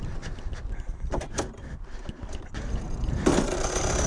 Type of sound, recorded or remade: recorded